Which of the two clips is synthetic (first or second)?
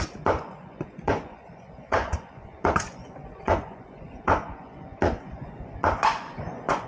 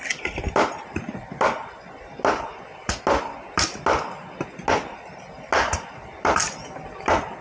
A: first